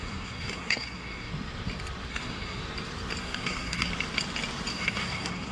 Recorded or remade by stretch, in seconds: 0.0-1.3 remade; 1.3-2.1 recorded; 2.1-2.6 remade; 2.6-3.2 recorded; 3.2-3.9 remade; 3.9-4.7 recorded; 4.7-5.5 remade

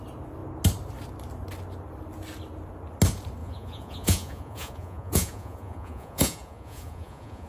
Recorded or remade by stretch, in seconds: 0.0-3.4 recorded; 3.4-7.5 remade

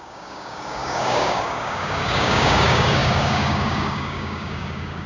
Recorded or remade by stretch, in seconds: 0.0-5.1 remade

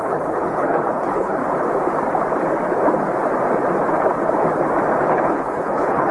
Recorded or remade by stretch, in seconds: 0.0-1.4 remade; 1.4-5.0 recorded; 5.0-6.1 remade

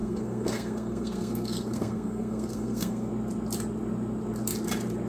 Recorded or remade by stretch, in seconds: 0.0-3.1 remade; 3.1-5.1 recorded